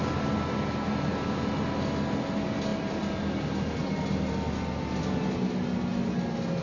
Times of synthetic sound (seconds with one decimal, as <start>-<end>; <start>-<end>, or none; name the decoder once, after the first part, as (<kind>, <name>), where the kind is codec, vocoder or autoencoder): none